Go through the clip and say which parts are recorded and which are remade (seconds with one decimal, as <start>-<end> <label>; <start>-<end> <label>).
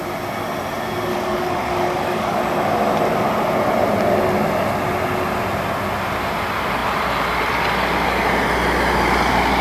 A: 0.0-1.1 recorded; 1.1-2.4 remade; 2.4-9.6 recorded